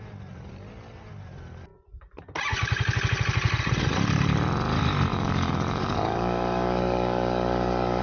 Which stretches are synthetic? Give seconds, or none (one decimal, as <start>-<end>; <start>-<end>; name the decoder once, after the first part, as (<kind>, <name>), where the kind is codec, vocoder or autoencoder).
5.1-8.0 (codec, DAC)